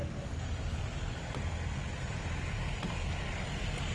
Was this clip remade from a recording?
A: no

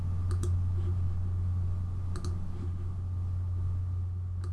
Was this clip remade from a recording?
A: no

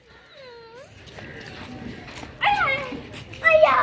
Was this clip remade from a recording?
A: no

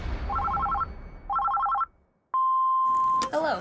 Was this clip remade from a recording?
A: no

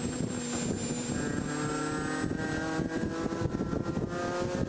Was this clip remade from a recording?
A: no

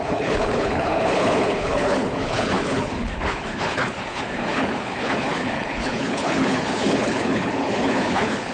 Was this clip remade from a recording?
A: yes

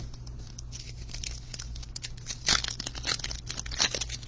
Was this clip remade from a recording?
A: no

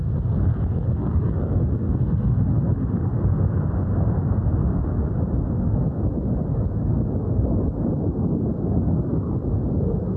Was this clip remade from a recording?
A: no